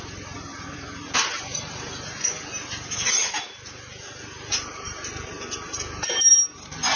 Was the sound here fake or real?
real